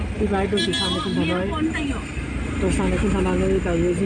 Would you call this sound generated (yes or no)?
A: no